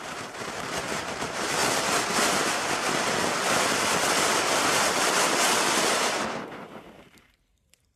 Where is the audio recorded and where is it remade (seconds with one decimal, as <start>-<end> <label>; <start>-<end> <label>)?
0.0-1.6 remade; 1.6-6.2 recorded; 6.2-8.0 remade